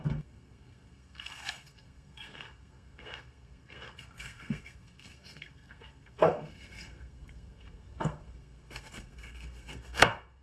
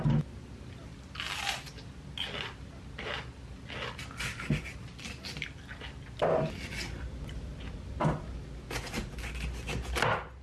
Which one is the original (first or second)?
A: second